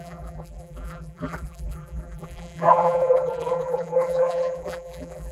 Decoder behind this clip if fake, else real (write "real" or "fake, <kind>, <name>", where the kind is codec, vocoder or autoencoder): fake, vocoder, BigVGAN v2